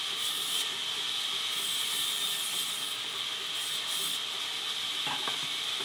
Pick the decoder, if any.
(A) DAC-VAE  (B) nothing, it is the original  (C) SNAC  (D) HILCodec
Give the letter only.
B